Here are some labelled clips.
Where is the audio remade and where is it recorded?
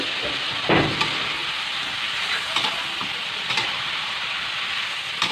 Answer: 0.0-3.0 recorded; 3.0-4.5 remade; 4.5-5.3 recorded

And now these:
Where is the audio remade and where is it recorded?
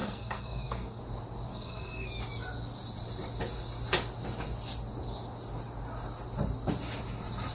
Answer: 0.0-1.0 remade; 1.0-1.5 recorded; 1.5-2.1 remade; 2.1-7.5 recorded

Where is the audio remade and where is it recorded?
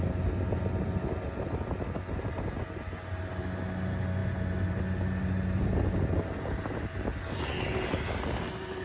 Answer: 0.0-8.8 recorded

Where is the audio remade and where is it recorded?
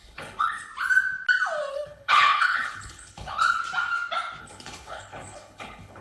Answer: 0.0-0.7 remade; 0.7-1.7 recorded; 1.7-3.6 remade; 3.6-4.4 recorded; 4.4-6.0 remade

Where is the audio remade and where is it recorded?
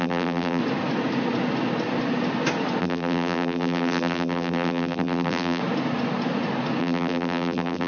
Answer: 0.0-0.6 remade; 0.6-2.8 recorded; 2.8-5.6 remade; 5.6-6.8 recorded; 6.8-7.9 remade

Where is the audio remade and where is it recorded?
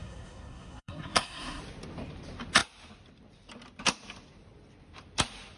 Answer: 0.0-1.6 remade; 1.6-5.6 recorded